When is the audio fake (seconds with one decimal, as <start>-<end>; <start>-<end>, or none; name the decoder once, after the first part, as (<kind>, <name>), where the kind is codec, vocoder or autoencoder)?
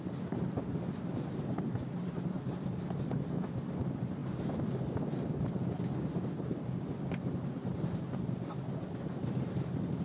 none